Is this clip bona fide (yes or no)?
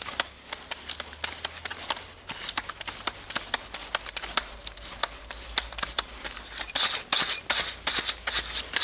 yes